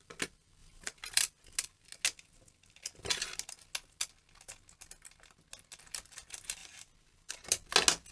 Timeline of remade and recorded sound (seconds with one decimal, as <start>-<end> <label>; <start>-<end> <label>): 0.0-0.6 recorded; 0.6-1.2 remade; 1.2-6.6 recorded; 6.6-7.3 remade; 7.3-8.1 recorded